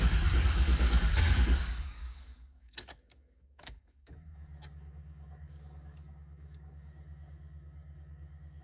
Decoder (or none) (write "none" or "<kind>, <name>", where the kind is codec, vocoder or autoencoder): codec, DAC